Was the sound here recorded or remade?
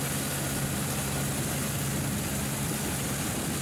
recorded